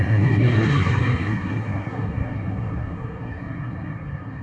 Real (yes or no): no